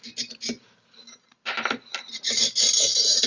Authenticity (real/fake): real